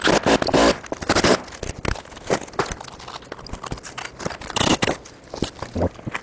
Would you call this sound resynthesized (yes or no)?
no